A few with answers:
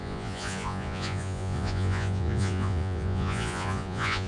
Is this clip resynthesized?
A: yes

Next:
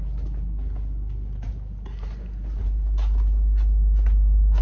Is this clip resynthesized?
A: no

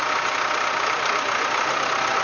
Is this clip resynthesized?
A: no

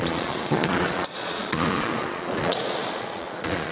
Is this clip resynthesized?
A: yes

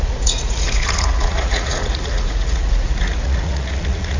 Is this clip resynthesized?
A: yes